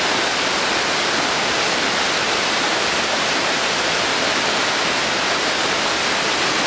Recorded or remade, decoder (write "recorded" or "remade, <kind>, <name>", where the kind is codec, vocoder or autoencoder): recorded